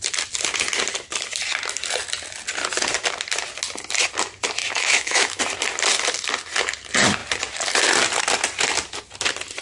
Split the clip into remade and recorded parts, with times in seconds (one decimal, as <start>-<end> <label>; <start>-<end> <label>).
0.0-4.6 recorded; 4.6-5.4 remade; 5.4-9.6 recorded